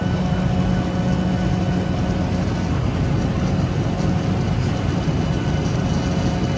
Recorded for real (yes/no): yes